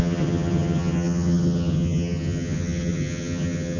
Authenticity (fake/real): fake